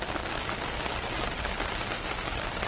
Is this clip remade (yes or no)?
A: no